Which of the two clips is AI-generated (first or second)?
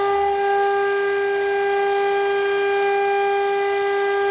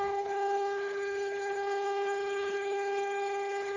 second